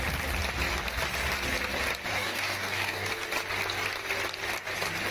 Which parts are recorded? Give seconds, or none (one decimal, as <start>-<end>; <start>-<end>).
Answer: 0.0-2.1; 3.1-5.1